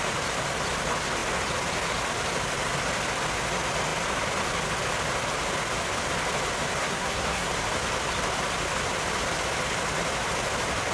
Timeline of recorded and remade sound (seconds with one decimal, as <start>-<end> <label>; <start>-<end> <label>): 0.0-6.8 recorded; 6.8-7.5 remade; 7.5-10.9 recorded